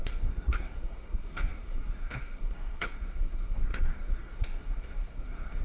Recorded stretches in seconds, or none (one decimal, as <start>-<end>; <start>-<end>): none

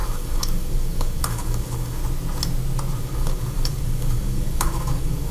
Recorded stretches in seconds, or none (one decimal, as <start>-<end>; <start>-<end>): 2.0-3.0

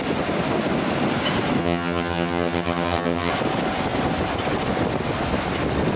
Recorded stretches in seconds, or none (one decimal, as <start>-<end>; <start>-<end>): 0.0-1.6; 3.3-6.0

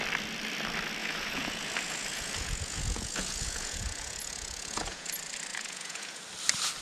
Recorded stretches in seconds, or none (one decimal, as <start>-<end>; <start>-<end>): 0.0-1.0; 5.1-5.5; 6.2-6.8

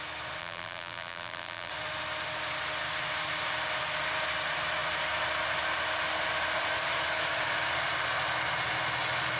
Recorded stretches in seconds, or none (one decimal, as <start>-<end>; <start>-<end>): 0.0-0.4; 1.7-9.4

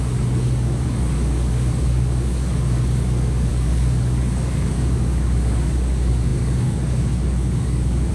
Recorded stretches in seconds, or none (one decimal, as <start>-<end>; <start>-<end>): none